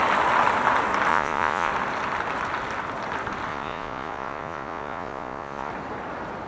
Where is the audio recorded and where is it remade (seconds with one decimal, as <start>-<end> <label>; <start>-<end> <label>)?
0.0-1.1 recorded; 1.1-1.7 remade; 1.7-3.5 recorded; 3.5-5.7 remade; 5.7-6.5 recorded